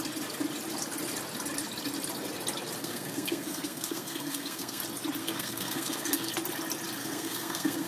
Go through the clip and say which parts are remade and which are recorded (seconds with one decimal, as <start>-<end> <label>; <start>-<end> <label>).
0.0-2.8 recorded; 2.8-4.8 remade; 4.8-5.2 recorded; 5.2-6.3 remade; 6.3-7.0 recorded; 7.0-7.9 remade